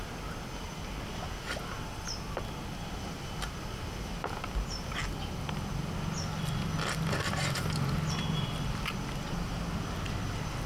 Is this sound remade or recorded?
recorded